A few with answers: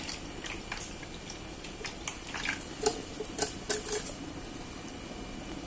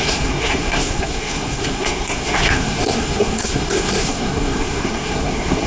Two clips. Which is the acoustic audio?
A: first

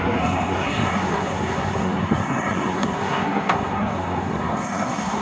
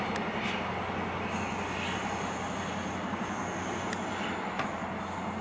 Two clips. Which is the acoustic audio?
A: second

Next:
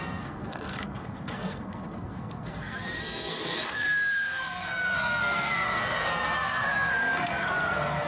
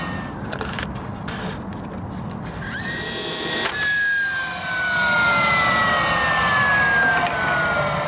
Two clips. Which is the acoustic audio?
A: second